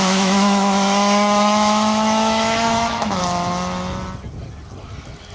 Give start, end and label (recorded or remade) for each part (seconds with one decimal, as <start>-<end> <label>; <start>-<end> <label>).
0.0-3.2 remade; 3.2-5.3 recorded